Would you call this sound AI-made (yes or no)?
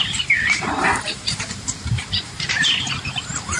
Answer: yes